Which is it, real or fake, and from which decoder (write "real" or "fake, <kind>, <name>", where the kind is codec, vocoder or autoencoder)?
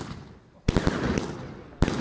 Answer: real